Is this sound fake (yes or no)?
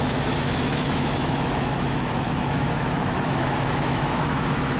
yes